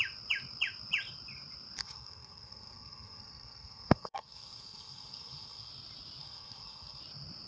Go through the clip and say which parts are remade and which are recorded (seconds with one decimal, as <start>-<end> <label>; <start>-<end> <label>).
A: 0.0-1.8 recorded; 1.8-5.7 remade; 5.7-6.2 recorded; 6.2-7.0 remade; 7.0-7.5 recorded